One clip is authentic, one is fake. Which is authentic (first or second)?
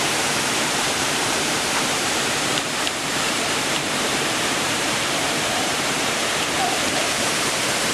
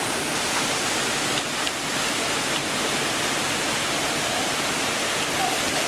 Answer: second